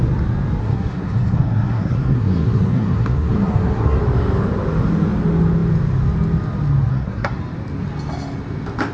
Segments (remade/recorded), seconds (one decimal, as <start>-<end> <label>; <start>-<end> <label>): 0.0-0.6 recorded; 0.6-4.0 remade; 4.0-6.9 recorded; 6.9-7.4 remade; 7.4-8.9 recorded